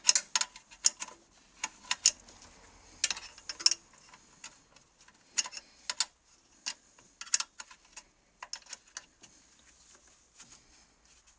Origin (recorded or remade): recorded